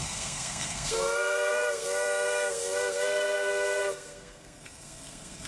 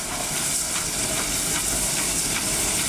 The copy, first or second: first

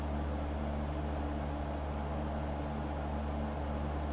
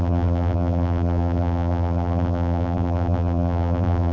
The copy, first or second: second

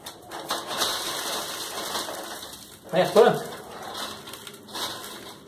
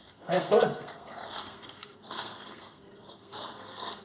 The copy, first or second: second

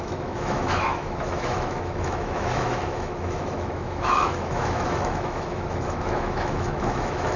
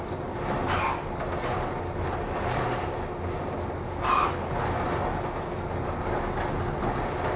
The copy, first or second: first